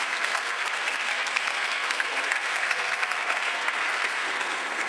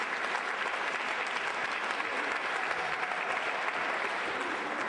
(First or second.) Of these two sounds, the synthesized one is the first